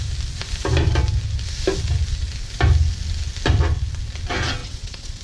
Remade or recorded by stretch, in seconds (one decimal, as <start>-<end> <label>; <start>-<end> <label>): 0.0-4.6 recorded; 4.6-5.2 remade